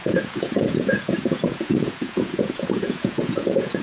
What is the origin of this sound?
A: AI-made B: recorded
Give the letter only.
A